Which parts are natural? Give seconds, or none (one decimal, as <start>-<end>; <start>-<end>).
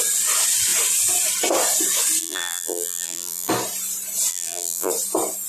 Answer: 0.0-2.2; 3.5-4.3; 4.9-5.5